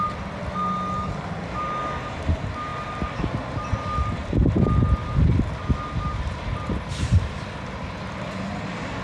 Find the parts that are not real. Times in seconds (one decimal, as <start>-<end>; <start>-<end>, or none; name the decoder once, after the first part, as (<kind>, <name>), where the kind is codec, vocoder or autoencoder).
none